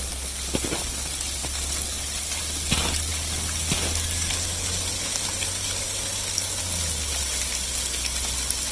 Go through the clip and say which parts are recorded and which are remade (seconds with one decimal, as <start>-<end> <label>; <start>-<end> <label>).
0.0-8.7 recorded

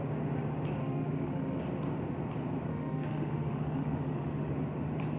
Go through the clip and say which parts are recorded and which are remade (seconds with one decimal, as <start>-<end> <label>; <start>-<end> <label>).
0.0-0.8 recorded; 0.8-1.6 remade; 1.6-2.7 recorded; 2.7-4.5 remade; 4.5-5.2 recorded

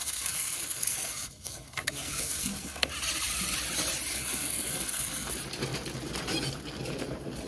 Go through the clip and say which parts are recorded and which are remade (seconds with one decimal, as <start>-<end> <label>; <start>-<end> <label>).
0.0-2.9 remade; 2.9-4.1 recorded; 4.1-5.3 remade; 5.3-7.5 recorded

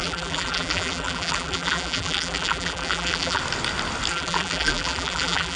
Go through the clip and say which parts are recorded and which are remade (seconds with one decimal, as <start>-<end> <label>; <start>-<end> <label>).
0.0-3.4 remade; 3.4-4.1 recorded; 4.1-5.6 remade

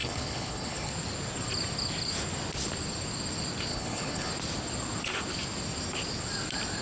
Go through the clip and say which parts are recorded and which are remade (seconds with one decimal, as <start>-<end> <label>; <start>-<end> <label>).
0.0-0.9 remade; 0.9-3.7 recorded; 3.7-4.3 remade; 4.3-6.8 recorded

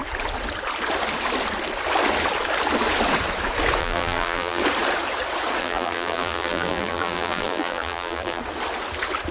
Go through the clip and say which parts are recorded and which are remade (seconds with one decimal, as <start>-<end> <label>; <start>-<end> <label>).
0.0-3.8 recorded; 3.8-4.6 remade; 4.6-5.6 recorded; 5.6-8.4 remade; 8.4-9.3 recorded

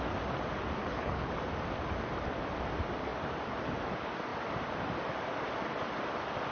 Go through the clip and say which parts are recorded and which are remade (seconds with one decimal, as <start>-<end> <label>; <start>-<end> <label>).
0.0-0.8 recorded; 0.8-1.3 remade; 1.3-6.5 recorded

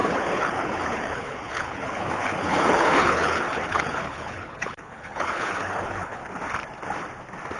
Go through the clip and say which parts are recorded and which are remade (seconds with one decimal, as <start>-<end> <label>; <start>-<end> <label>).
0.0-6.2 remade; 6.2-7.6 recorded